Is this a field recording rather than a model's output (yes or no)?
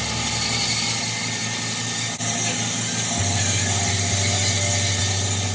yes